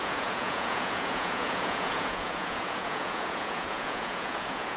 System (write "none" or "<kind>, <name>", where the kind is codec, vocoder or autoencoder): vocoder, Vocos